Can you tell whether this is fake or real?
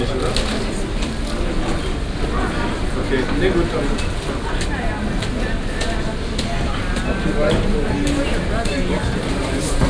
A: real